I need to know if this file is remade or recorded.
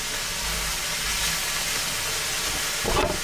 recorded